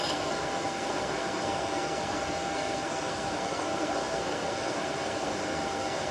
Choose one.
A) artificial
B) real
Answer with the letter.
A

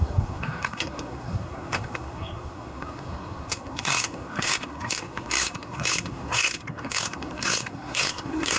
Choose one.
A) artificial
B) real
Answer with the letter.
A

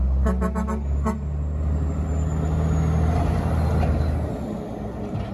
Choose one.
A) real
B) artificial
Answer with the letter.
A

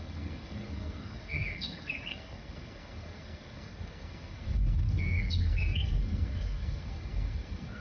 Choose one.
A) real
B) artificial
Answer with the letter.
B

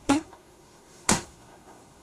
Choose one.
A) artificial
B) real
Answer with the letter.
A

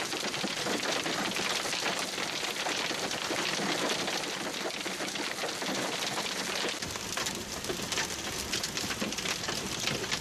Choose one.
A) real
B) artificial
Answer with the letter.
A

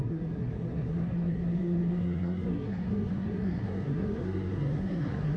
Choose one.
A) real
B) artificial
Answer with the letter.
B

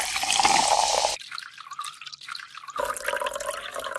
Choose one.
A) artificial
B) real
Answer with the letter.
B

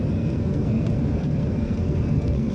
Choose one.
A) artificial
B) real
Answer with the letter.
A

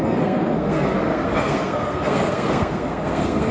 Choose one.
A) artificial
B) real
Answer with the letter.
A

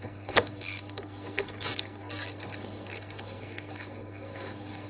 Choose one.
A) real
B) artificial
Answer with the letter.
B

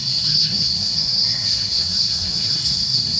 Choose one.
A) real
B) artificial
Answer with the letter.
B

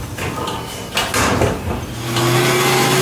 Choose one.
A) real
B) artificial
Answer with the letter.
A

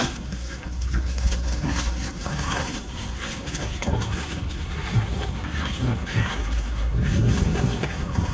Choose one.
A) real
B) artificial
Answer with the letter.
B